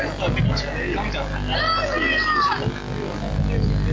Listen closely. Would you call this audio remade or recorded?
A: recorded